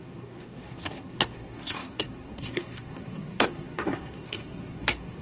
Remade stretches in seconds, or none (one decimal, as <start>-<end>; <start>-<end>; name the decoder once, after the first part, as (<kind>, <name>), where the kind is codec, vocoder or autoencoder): 0.0-5.2 (codec, SNAC)